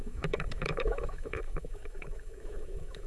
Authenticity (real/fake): fake